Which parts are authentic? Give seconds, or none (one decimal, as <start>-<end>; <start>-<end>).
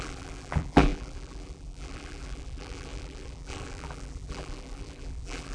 none